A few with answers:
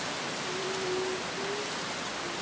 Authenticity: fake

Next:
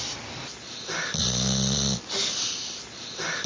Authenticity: real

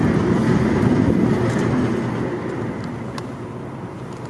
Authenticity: real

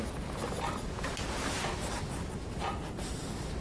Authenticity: real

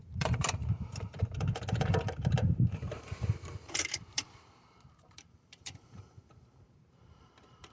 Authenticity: fake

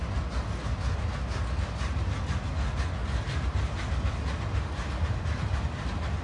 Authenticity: real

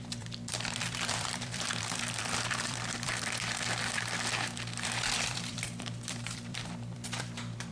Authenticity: fake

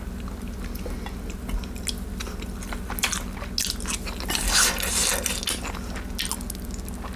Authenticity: real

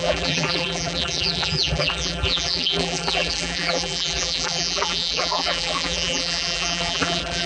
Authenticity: fake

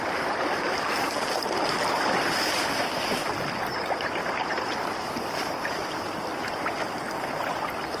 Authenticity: fake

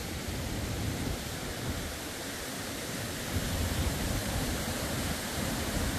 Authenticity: fake